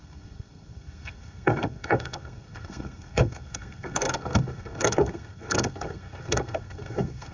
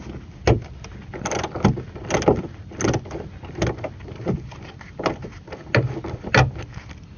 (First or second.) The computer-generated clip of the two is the first